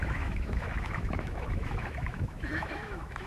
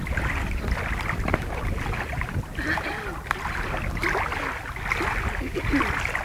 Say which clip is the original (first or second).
second